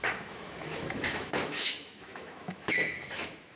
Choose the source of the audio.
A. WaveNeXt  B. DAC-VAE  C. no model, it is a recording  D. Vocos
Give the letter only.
B